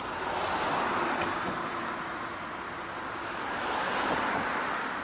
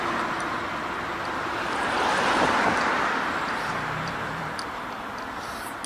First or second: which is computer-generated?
second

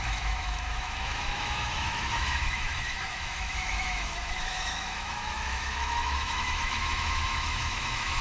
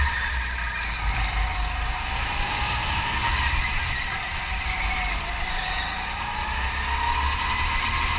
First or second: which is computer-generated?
first